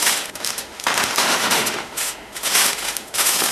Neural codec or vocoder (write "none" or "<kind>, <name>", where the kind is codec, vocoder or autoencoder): autoencoder, DAC-VAE